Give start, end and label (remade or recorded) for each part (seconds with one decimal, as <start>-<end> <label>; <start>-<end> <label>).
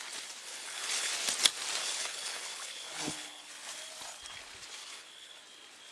0.0-0.4 recorded; 0.4-1.1 remade; 1.1-1.8 recorded; 1.8-3.5 remade; 3.5-4.8 recorded; 4.8-5.4 remade; 5.4-5.9 recorded